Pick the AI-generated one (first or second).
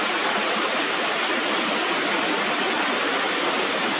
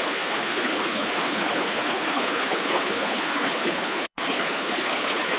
second